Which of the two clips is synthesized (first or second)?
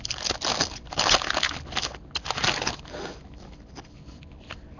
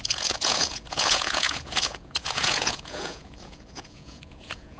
second